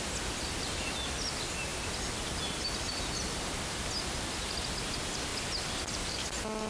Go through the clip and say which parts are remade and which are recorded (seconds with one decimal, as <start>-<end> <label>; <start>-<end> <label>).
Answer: 0.0-6.7 recorded